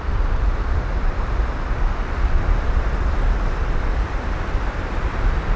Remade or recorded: recorded